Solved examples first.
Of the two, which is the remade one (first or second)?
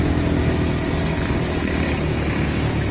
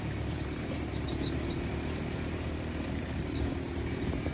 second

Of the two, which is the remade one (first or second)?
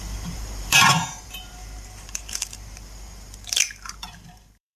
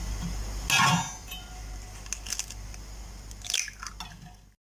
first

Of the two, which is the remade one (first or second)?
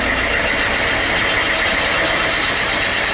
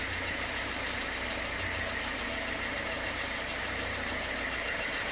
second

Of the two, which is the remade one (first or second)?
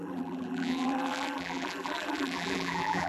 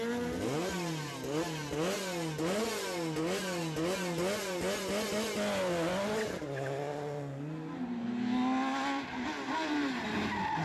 first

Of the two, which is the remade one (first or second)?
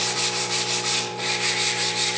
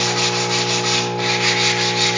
first